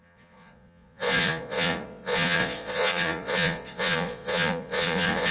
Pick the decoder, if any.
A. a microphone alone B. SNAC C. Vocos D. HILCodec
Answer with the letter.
C